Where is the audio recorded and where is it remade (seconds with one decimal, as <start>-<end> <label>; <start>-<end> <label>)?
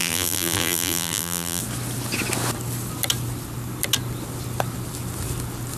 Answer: 0.0-1.6 remade; 1.6-5.8 recorded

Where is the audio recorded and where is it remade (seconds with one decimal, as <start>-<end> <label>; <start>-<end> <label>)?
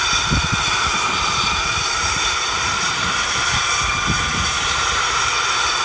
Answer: 0.0-0.4 recorded; 0.4-3.9 remade; 3.9-4.3 recorded; 4.3-5.3 remade; 5.3-5.8 recorded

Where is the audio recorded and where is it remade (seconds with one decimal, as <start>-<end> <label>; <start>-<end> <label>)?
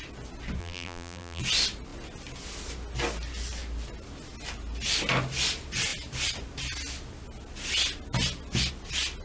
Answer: 0.0-0.6 recorded; 0.6-1.4 remade; 1.4-9.2 recorded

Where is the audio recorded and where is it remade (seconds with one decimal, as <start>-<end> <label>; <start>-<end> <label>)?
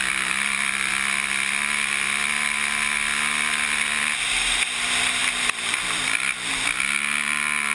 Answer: 0.0-0.9 remade; 0.9-5.2 recorded; 5.2-6.5 remade; 6.5-7.7 recorded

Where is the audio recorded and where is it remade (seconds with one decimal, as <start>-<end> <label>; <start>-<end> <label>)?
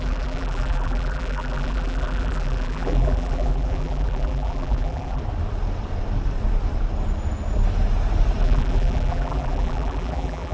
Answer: 0.0-5.2 remade; 5.2-8.4 recorded; 8.4-10.5 remade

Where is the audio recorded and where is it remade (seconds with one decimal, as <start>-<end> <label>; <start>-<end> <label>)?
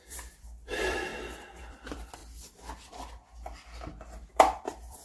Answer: 0.0-1.1 remade; 1.1-1.6 recorded; 1.6-2.2 remade; 2.2-4.3 recorded; 4.3-5.0 remade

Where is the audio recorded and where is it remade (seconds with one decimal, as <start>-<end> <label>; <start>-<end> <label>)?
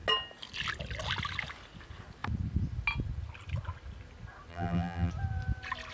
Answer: 0.0-4.5 recorded; 4.5-5.1 remade; 5.1-5.9 recorded